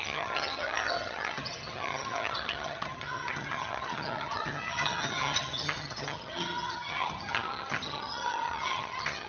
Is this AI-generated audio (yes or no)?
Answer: yes